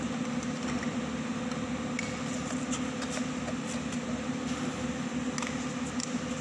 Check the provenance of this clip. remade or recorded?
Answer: recorded